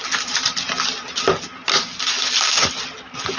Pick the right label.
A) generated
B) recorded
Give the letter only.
B